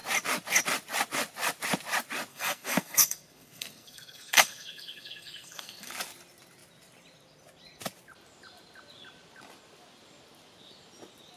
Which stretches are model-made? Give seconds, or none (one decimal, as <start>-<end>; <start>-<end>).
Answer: 2.3-5.9